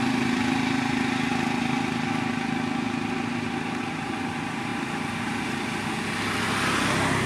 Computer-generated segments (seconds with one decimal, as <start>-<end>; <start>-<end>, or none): none